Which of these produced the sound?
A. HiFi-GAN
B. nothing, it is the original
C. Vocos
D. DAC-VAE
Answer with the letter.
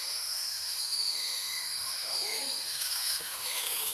D